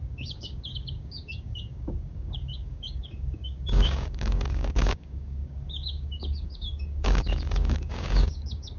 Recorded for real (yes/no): no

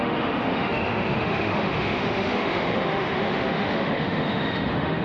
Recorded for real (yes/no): no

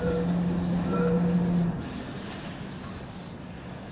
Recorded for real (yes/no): yes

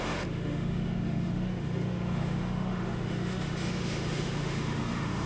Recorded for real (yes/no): no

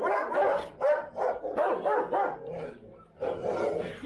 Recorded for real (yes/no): yes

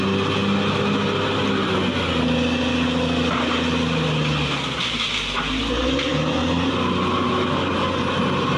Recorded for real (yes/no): yes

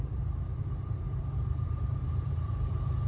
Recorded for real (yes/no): no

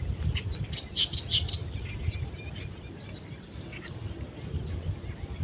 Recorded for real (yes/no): yes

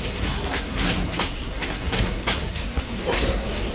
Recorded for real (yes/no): no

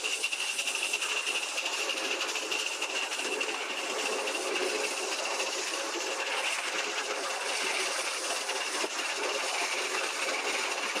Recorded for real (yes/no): yes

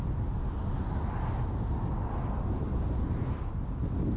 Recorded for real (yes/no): yes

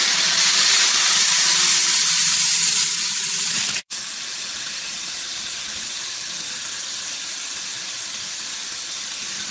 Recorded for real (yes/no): no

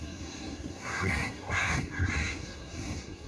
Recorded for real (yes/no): no